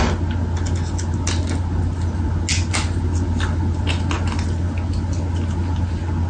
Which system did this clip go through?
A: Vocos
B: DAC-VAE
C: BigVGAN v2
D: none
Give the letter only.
D